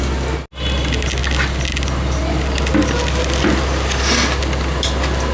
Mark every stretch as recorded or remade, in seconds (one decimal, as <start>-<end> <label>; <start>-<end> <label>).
0.0-5.3 recorded